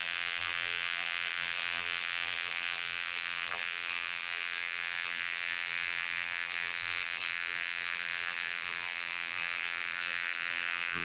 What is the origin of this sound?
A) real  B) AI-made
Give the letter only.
B